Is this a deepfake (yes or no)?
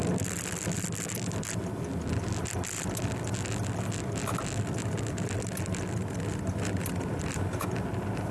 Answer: no